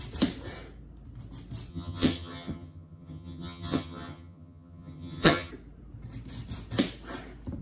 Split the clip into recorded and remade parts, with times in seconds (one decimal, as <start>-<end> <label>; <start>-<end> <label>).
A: 0.0-1.7 recorded; 1.7-5.5 remade; 5.5-7.6 recorded